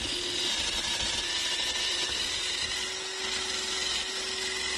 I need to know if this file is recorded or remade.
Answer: recorded